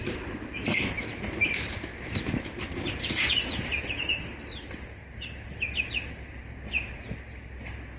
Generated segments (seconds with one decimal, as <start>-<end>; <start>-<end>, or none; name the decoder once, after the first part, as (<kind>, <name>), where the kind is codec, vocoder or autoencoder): 1.1-4.1 (vocoder, BigVGAN v2)